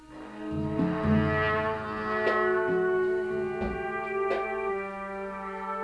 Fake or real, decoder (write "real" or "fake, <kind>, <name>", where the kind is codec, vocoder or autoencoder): real